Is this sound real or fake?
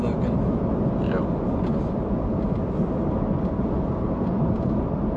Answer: real